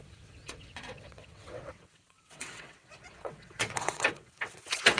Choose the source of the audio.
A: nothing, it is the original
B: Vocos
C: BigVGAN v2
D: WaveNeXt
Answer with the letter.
D